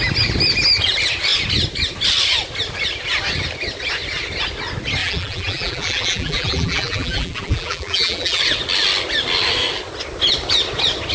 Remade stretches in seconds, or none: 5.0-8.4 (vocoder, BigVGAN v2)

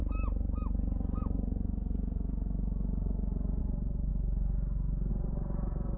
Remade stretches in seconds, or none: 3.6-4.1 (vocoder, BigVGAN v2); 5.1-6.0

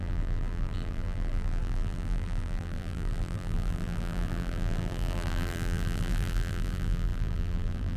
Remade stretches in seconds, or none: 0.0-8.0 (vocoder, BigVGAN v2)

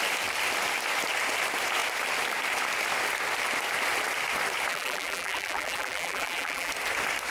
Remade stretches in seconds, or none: 4.7-6.7 (vocoder, BigVGAN v2)